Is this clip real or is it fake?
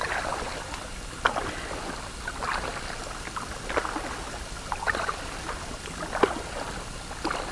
real